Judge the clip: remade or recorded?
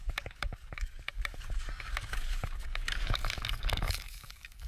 remade